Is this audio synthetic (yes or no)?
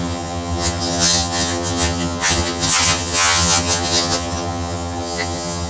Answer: yes